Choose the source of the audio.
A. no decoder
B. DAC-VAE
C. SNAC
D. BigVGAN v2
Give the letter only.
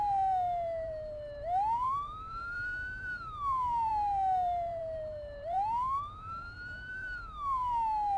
D